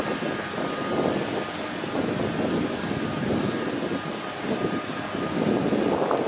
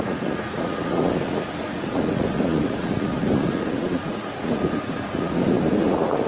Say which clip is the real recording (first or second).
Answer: first